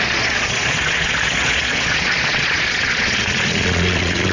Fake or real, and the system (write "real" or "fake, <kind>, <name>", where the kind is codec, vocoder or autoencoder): fake, vocoder, Vocos